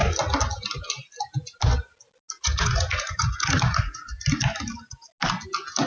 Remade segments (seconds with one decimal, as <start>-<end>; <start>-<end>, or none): 2.4-4.1